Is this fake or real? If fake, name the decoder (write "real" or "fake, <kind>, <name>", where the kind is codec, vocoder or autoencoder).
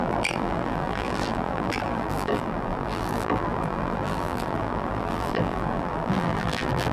fake, vocoder, BigVGAN v2